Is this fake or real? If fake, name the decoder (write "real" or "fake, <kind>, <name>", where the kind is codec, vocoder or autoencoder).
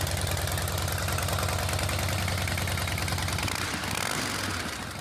real